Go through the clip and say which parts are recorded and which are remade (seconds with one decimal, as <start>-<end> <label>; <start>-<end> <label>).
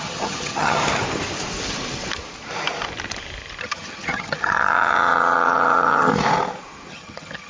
0.0-0.8 remade; 0.8-3.6 recorded; 3.6-6.1 remade; 6.1-6.9 recorded; 6.9-7.5 remade